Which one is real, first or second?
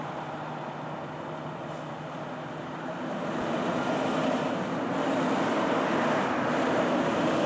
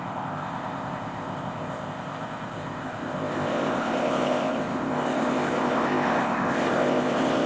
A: first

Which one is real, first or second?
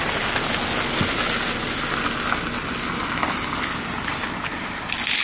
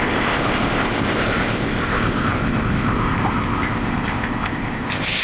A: first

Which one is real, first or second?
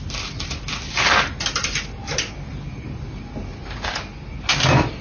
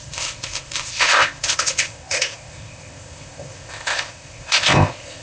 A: first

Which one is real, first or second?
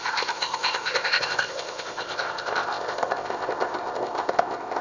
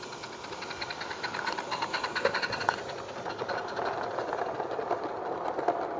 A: second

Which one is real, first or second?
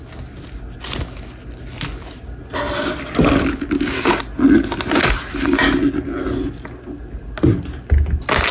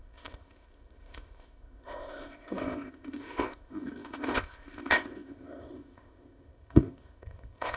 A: first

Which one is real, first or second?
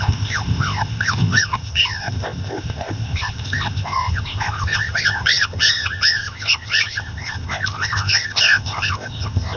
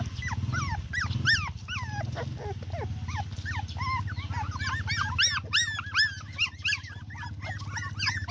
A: second